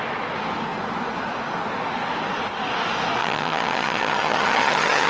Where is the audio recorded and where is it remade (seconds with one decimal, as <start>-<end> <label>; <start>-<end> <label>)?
0.0-3.2 recorded; 3.2-5.1 remade